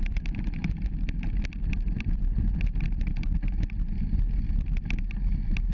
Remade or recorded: remade